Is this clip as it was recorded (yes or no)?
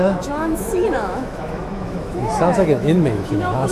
no